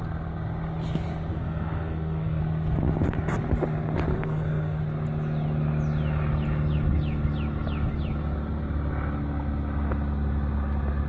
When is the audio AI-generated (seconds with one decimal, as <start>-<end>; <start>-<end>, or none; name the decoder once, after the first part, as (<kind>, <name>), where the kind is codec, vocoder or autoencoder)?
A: 1.3-2.4 (codec, SNAC); 4.1-4.8